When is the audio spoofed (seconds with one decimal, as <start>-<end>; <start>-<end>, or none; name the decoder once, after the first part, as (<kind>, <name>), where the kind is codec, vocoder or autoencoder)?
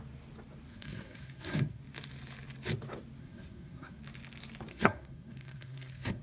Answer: 0.7-1.8 (codec, SNAC); 3.2-4.0; 4.7-6.2